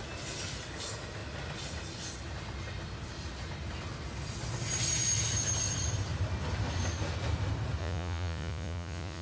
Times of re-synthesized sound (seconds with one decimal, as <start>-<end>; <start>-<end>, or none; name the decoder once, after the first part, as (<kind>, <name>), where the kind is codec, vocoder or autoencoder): 7.8-9.2 (vocoder, Vocos)